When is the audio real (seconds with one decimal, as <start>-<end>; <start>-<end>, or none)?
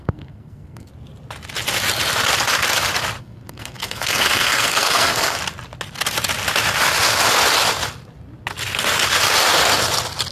0.9-3.2; 5.4-10.3